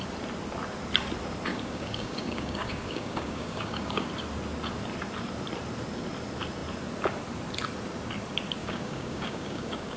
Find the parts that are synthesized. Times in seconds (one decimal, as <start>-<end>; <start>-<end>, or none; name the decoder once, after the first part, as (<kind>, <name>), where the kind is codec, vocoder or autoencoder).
1.5-4.1 (codec, DAC); 8.6-10.0